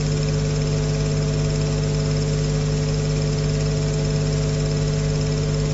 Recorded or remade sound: recorded